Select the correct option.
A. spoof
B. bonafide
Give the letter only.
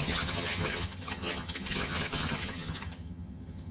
A